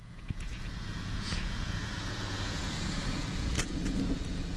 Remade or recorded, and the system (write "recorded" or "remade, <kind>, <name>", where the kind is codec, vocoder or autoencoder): remade, vocoder, Vocos